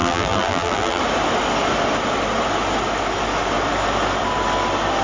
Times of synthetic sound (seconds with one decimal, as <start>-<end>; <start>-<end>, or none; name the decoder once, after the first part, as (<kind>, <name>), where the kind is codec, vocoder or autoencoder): 0.0-1.0 (vocoder, BigVGAN v2)